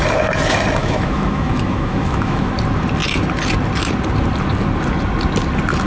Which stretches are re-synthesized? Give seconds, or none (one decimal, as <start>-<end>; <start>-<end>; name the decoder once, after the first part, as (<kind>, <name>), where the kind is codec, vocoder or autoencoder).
0.8-2.5 (autoencoder, DAC-VAE)